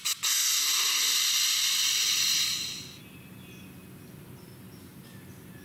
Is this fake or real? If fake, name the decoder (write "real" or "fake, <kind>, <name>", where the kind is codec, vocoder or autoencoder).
real